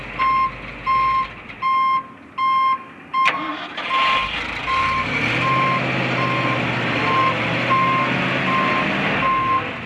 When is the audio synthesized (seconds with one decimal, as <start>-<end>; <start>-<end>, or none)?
none